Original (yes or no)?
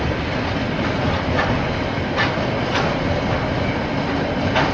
yes